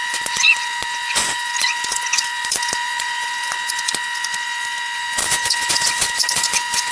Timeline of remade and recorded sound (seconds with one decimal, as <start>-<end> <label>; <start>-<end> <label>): 0.0-6.9 remade